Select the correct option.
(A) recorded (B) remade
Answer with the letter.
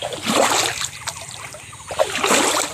A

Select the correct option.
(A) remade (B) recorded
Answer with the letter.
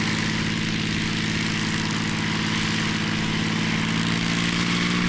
B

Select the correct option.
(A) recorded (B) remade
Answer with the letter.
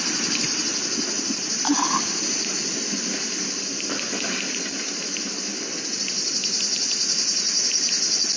A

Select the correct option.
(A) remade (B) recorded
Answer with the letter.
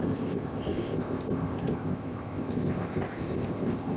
A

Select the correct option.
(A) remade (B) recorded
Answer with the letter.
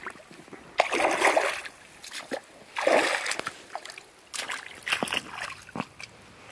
B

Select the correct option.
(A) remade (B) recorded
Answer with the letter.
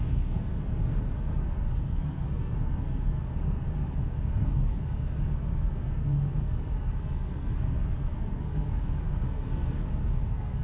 A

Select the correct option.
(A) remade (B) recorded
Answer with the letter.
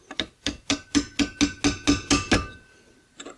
B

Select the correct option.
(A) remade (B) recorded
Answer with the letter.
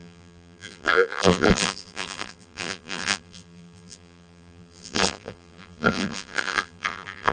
A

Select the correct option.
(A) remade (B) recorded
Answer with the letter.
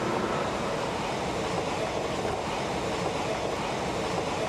B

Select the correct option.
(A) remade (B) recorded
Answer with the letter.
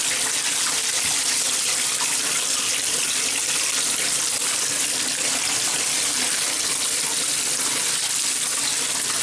B